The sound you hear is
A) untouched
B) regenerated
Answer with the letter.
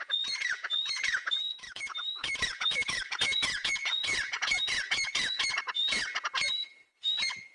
B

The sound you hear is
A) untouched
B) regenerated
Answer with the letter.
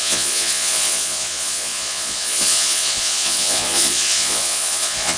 B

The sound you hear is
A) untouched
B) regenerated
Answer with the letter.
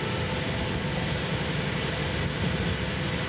A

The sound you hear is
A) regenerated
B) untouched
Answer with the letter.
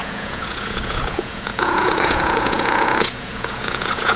A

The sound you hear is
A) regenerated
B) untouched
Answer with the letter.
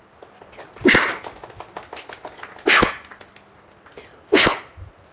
B